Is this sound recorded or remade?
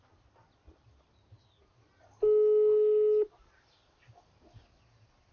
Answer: recorded